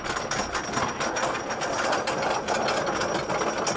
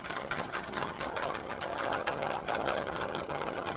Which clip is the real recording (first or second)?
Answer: first